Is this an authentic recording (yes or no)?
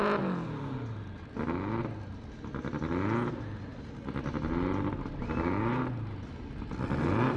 yes